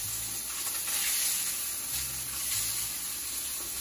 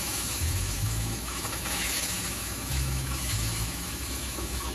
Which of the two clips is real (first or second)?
first